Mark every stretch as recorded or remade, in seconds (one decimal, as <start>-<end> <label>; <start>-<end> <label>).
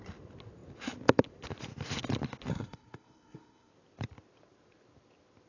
0.0-2.5 recorded; 2.5-3.7 remade; 3.7-5.5 recorded